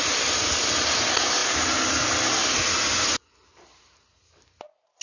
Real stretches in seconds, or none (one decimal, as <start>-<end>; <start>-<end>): 0.0-5.0